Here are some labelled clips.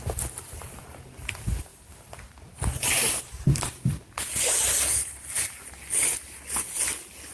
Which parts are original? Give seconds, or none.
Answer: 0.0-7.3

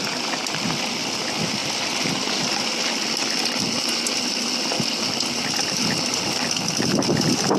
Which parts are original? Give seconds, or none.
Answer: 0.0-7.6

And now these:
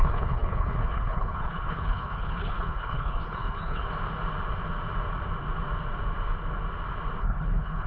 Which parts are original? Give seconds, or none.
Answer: 3.8-7.2

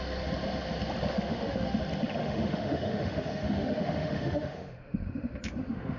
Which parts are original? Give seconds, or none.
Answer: 0.0-1.1; 1.8-2.2

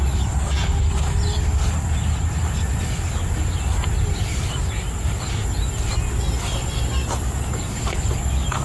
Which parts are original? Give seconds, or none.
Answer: 0.0-8.6

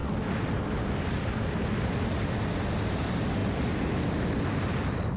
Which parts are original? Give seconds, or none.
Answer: 2.1-5.2

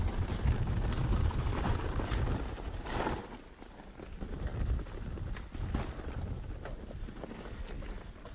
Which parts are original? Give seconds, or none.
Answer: 0.0-1.0; 1.8-4.5; 7.2-8.3